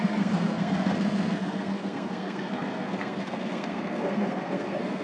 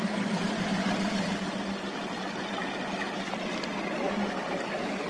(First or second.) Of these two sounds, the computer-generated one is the first